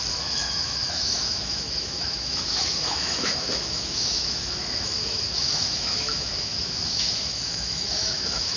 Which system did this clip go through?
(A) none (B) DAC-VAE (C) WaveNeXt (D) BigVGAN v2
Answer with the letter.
B